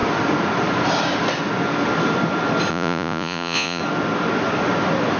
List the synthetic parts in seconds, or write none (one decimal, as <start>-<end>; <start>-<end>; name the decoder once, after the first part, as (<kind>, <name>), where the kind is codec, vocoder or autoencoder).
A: 2.7-3.8 (vocoder, Vocos)